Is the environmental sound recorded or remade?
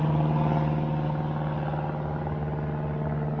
recorded